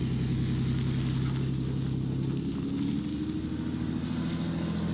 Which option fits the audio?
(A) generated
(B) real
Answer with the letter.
B